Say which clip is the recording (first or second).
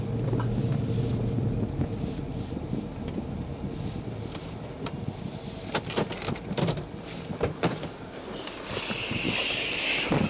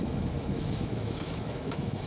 first